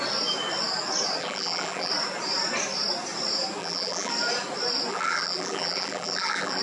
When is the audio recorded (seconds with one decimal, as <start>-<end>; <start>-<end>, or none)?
0.0-1.2; 1.9-3.6; 4.1-4.9